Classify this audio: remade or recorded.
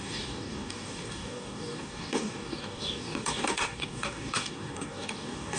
remade